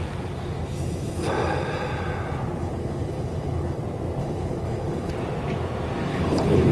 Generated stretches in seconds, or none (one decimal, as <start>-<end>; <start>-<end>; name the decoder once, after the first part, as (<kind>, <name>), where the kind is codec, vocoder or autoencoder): 2.6-3.8 (codec, HILCodec); 4.2-5.1; 6.1-6.7